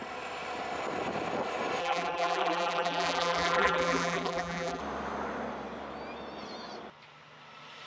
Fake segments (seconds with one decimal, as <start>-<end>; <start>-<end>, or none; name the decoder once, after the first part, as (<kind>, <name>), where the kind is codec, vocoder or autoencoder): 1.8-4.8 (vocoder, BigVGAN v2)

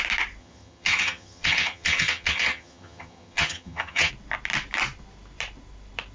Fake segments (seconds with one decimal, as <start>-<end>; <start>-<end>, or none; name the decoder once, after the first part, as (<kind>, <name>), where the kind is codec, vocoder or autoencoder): 0.4-4.1 (vocoder, HiFi-GAN)

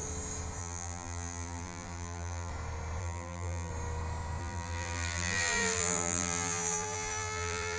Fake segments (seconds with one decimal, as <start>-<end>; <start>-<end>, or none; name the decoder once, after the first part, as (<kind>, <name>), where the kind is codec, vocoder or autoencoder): 0.6-2.5 (vocoder, BigVGAN v2); 3.0-3.7; 4.4-7.8

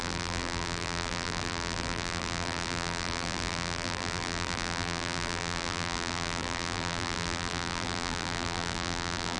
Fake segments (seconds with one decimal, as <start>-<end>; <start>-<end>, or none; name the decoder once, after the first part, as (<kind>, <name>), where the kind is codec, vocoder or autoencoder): 0.0-9.4 (vocoder, BigVGAN v2)

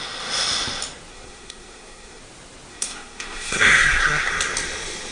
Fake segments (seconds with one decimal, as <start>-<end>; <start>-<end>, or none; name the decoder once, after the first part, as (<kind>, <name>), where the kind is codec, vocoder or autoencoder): 1.1-2.2 (codec, SNAC); 2.7-4.3